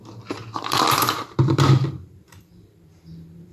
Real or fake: fake